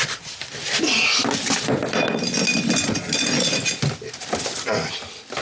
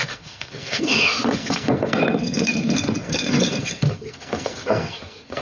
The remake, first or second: second